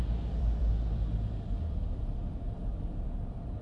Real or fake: fake